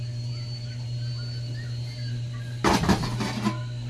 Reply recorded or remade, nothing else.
recorded